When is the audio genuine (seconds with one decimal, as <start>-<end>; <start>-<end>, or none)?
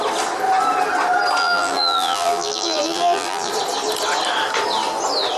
0.0-1.4; 3.5-5.4